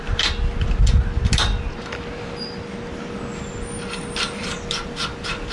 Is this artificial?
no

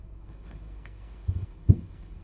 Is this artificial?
yes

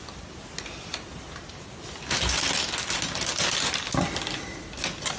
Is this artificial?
no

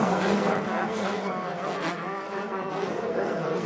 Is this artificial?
yes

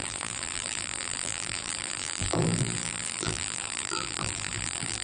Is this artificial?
yes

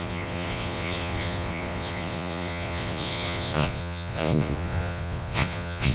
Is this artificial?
yes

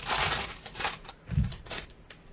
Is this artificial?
yes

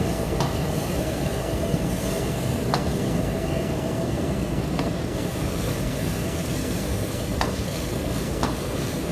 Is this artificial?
yes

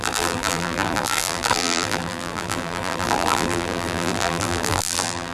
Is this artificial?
yes